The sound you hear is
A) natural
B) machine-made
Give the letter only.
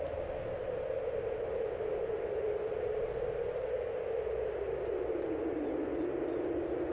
A